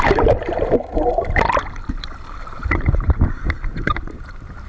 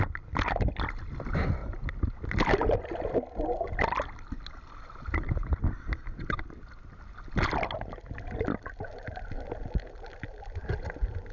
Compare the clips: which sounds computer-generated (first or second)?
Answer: first